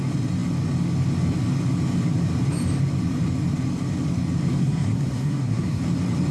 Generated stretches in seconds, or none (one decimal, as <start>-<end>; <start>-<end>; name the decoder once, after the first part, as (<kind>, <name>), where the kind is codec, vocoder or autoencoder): 4.6-5.8 (codec, SNAC)